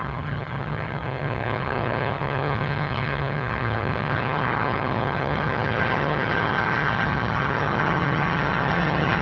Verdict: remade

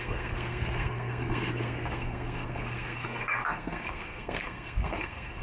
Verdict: remade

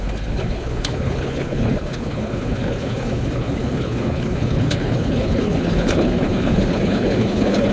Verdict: remade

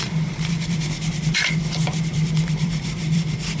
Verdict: remade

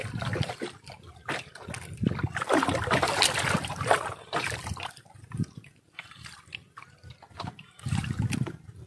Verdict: recorded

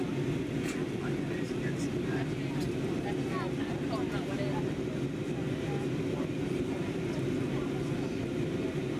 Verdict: recorded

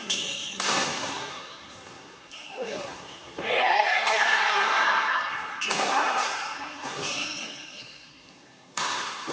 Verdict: remade